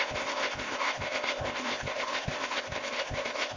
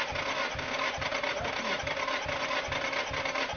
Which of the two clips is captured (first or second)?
second